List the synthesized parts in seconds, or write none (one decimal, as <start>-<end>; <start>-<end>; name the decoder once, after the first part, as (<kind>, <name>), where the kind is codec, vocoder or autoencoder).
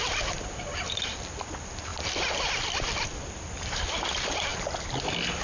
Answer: none